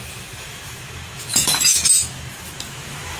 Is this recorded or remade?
remade